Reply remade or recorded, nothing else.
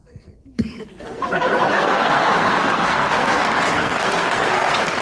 remade